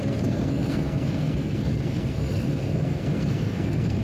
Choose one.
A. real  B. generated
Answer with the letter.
B